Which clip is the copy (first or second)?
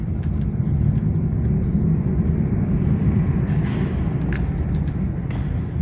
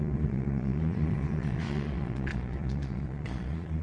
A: second